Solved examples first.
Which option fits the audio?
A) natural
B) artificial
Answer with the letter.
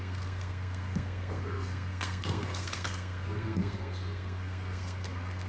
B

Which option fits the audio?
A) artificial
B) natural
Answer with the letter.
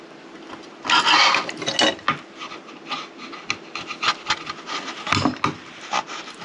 B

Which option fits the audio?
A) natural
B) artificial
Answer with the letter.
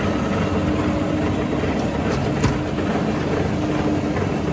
A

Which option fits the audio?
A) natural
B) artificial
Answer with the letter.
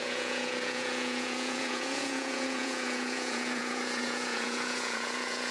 B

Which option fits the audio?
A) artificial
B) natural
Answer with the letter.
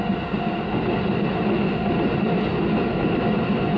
B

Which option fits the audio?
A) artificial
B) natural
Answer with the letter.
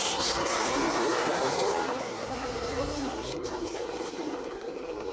A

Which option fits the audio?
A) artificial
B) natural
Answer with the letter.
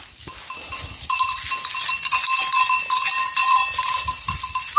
B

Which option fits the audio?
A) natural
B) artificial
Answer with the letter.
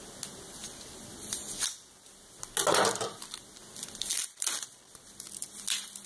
A